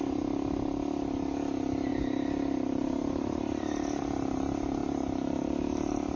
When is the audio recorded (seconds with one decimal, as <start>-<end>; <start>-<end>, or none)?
0.0-1.9; 4.0-4.8